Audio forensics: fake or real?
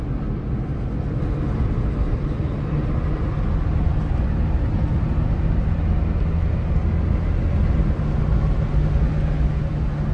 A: real